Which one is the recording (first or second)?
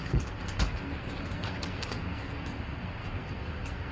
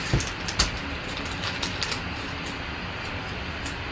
second